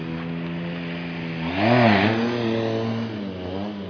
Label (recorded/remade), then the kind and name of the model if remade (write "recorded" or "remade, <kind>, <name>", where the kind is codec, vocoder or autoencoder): recorded